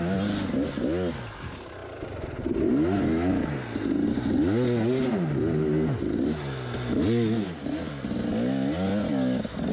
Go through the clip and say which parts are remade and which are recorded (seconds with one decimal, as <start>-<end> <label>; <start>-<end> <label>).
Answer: 0.0-9.7 recorded